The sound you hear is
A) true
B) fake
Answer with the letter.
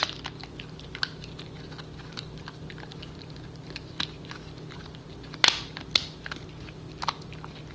A